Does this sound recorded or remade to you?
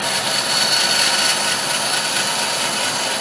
recorded